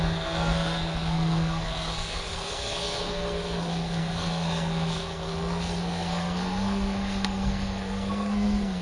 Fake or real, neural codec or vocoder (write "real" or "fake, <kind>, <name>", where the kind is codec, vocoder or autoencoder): fake, codec, SNAC